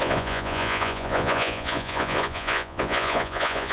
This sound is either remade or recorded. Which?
remade